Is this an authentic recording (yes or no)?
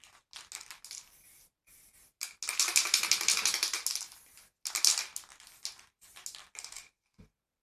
yes